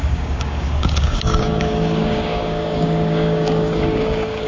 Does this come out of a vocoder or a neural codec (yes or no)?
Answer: yes